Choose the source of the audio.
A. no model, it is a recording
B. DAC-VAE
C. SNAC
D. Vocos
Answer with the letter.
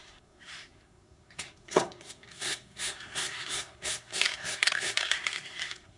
C